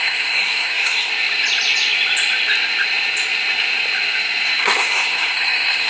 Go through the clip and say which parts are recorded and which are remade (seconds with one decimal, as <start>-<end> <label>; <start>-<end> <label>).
0.0-1.1 remade; 1.1-4.6 recorded; 4.6-5.9 remade